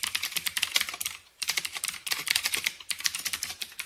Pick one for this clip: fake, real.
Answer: fake